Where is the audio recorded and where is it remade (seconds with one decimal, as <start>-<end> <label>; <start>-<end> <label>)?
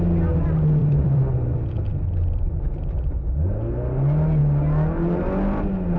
0.0-0.8 recorded; 0.8-2.6 remade; 2.6-6.0 recorded